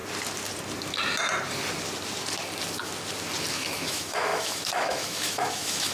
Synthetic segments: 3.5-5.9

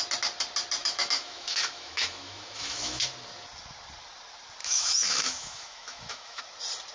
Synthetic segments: 0.8-3.0; 4.6-6.4

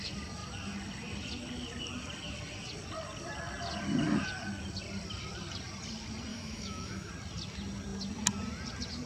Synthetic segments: 6.3-7.1

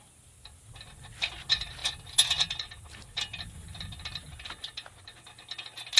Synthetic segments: none

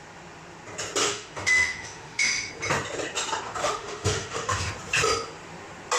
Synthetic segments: 1.0-2.5; 3.6-4.7

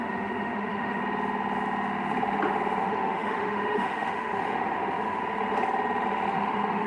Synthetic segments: 0.0-1.0; 2.8-5.2; 6.3-6.9